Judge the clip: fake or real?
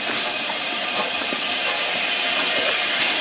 fake